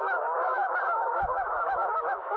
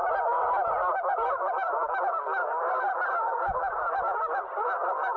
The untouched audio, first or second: second